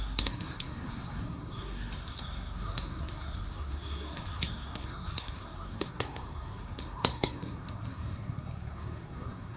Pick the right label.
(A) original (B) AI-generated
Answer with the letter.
B